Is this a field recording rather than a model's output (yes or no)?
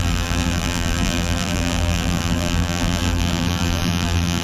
no